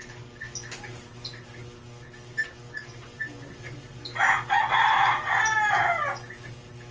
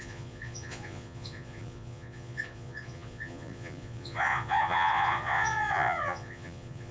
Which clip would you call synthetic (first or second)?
second